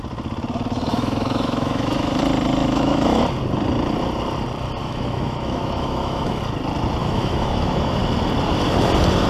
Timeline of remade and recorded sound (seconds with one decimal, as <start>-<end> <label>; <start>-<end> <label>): 0.0-0.9 recorded; 0.9-2.2 remade; 2.2-2.6 recorded; 2.6-3.2 remade; 3.2-4.8 recorded; 4.8-6.4 remade; 6.4-7.0 recorded; 7.0-8.0 remade; 8.0-9.3 recorded